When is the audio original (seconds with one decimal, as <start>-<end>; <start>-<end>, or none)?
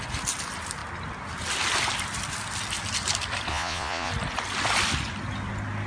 0.0-3.5; 4.1-5.9